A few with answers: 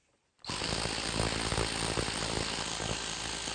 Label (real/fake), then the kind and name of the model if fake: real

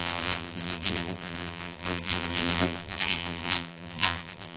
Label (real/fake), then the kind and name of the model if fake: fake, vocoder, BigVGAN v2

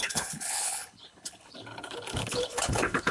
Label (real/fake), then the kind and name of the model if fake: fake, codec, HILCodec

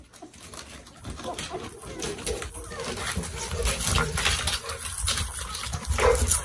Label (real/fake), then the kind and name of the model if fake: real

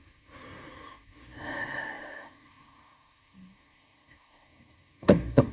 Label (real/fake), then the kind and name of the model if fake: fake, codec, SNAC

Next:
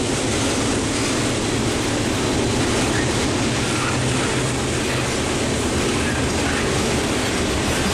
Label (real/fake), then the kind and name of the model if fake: real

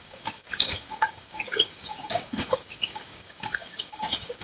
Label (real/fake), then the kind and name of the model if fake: fake, codec, DAC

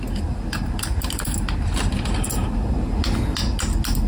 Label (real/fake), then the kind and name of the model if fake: real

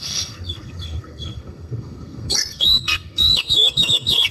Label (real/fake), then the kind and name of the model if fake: fake, codec, SNAC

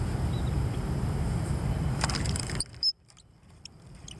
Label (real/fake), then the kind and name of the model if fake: real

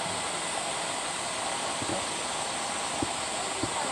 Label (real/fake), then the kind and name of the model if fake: real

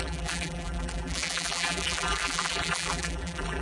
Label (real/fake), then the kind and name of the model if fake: fake, vocoder, BigVGAN v2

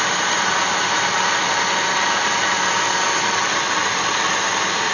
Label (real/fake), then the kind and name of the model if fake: real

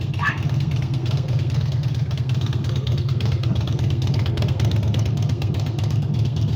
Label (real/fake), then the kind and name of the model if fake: fake, codec, SNAC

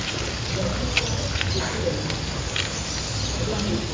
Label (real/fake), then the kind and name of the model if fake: real